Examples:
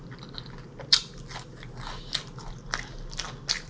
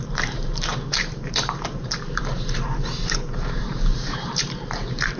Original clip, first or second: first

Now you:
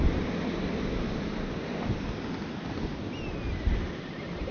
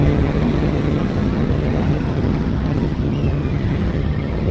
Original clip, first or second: first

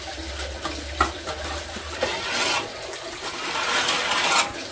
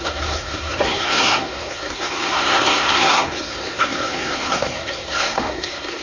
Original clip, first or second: first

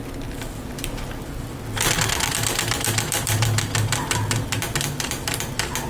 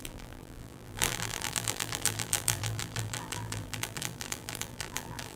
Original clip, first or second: first